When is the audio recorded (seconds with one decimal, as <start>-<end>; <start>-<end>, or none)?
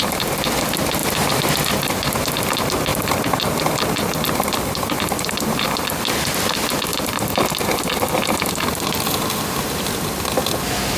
0.0-2.9; 6.3-6.9; 7.5-11.0